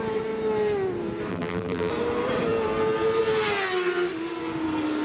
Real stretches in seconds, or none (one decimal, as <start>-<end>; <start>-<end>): 0.0-1.3; 1.9-5.0